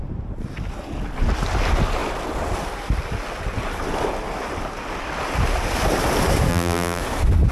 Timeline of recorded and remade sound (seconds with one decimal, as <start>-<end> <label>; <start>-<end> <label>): 0.0-6.5 recorded; 6.5-7.0 remade; 7.0-7.5 recorded